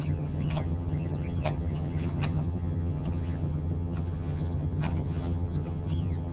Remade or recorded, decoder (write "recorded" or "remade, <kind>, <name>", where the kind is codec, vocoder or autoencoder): remade, vocoder, HiFi-GAN